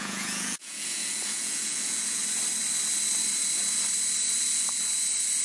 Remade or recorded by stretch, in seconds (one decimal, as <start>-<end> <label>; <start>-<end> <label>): 0.0-2.2 remade; 2.2-5.4 recorded